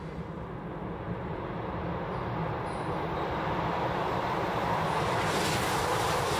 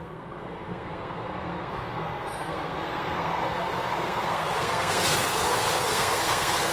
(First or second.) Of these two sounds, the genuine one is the first